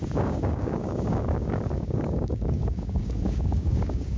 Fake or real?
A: fake